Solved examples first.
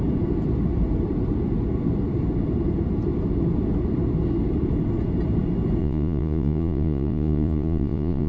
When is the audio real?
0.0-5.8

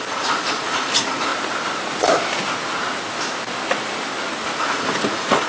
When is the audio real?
1.3-4.6

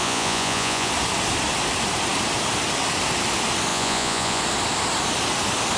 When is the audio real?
0.9-3.7; 4.4-5.8

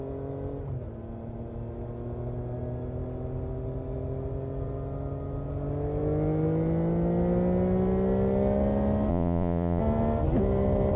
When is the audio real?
0.0-9.1; 9.8-11.0

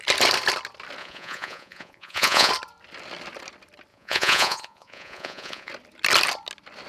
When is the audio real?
0.0-1.0; 2.5-3.9; 5.7-6.9

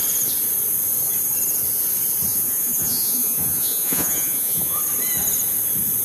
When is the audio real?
0.0-2.3; 4.8-6.0

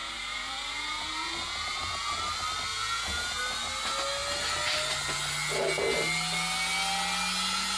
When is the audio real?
2.2-2.7; 3.4-7.8